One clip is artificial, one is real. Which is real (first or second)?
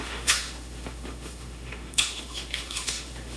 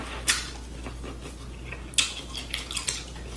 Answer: second